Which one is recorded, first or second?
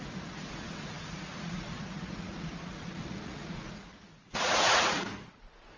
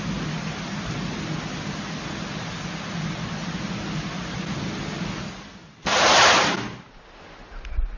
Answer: second